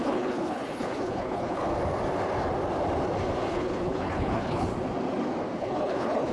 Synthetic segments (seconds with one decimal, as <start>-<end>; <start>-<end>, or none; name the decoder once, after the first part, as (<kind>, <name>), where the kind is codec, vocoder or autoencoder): 0.0-1.6 (codec, HILCodec); 3.5-4.7; 5.6-6.3